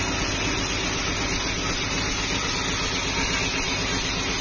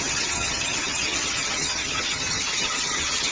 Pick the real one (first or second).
first